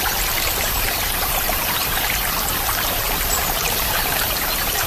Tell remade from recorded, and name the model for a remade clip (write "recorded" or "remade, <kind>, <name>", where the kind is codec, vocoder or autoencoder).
remade, vocoder, BigVGAN v2